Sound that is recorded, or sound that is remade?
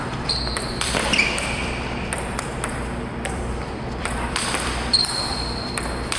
remade